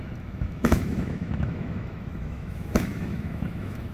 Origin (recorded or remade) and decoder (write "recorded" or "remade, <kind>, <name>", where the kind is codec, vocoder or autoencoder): remade, autoencoder, DAC-VAE